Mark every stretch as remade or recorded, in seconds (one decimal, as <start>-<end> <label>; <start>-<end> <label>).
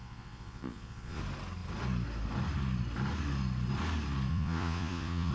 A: 0.0-1.2 remade; 1.2-4.3 recorded; 4.3-5.3 remade